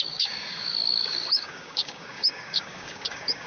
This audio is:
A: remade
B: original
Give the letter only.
A